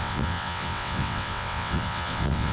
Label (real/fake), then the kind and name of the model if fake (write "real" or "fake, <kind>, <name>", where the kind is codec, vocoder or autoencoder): fake, vocoder, WaveNeXt